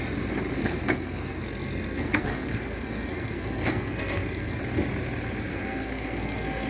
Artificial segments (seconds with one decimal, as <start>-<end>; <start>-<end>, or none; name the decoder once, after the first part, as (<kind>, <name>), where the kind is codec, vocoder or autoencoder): 0.6-4.6 (codec, SNAC); 5.5-6.7